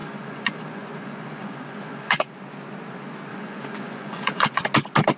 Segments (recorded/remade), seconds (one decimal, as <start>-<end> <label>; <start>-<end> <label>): 0.0-2.3 remade; 2.3-3.3 recorded; 3.3-4.6 remade; 4.6-5.2 recorded